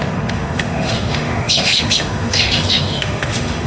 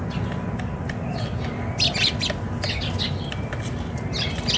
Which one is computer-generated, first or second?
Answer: first